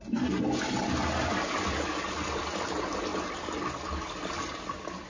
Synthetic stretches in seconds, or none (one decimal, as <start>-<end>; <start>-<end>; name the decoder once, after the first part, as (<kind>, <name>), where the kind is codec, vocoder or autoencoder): none